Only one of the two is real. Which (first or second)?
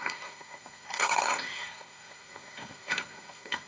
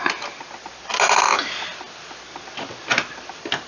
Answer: second